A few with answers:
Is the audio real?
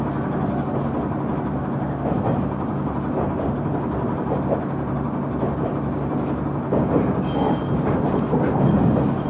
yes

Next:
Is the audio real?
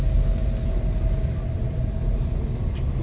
yes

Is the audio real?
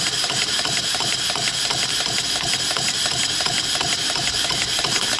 yes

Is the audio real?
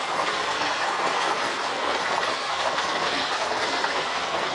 no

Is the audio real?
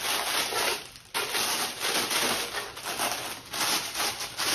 yes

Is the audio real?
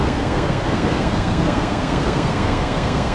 no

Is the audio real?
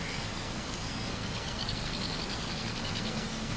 no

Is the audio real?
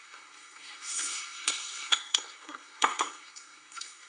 no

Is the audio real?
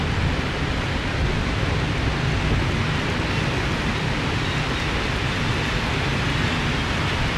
yes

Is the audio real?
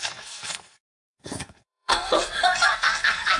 no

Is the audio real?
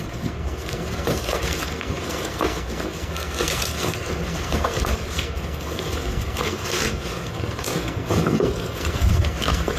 no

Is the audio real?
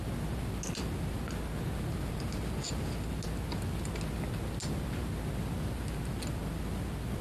yes